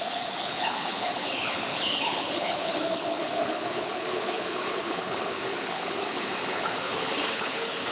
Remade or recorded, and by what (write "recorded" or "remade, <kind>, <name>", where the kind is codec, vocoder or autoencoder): remade, codec, HILCodec